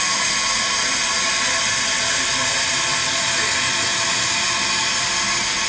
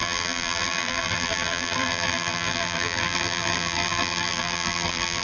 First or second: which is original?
first